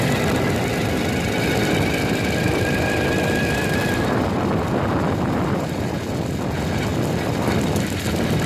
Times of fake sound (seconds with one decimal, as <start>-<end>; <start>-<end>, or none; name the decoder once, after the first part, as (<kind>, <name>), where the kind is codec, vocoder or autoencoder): none